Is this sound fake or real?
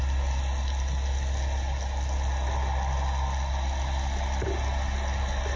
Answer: real